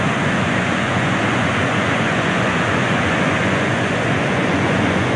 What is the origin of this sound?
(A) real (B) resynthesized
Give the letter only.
B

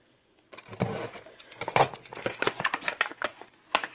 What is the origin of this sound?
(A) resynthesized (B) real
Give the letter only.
A